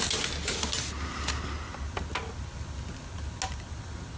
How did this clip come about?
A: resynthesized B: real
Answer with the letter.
B